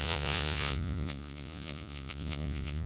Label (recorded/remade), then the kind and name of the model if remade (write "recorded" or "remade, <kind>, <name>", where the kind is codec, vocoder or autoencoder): remade, vocoder, Vocos